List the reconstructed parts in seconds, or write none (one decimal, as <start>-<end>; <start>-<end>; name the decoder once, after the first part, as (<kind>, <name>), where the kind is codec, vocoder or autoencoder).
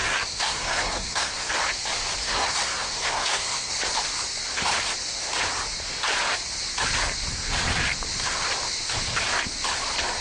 0.0-1.5 (codec, SNAC); 2.2-3.7